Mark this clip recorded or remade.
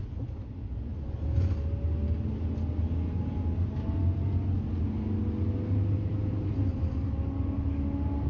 recorded